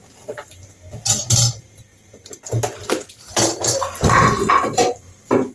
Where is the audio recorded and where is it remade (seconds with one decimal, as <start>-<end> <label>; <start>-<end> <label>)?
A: 0.0-1.9 remade; 1.9-4.5 recorded; 4.5-5.5 remade